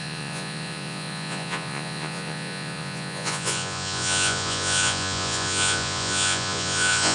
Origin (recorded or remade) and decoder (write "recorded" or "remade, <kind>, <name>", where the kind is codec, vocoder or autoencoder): remade, vocoder, Vocos